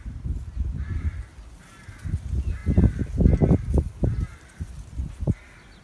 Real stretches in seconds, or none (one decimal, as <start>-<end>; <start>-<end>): 0.0-5.8